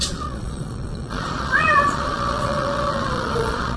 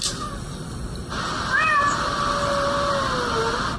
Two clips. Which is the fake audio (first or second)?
first